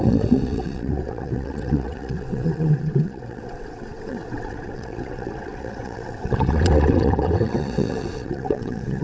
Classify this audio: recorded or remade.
remade